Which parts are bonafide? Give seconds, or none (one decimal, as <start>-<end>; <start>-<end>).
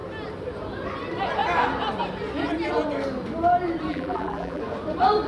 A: 0.0-3.9; 4.6-5.3